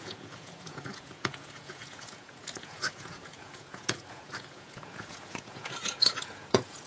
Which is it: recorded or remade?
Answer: remade